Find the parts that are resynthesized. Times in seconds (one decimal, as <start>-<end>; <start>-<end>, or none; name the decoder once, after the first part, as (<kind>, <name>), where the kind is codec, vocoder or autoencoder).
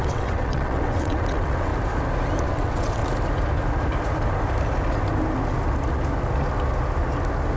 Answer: 0.0-1.7 (vocoder, WaveNeXt); 2.4-3.0